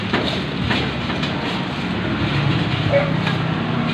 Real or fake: real